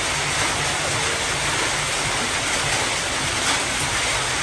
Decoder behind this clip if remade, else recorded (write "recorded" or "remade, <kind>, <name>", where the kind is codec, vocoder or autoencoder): recorded